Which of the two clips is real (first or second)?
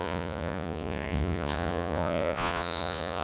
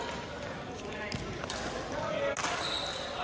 second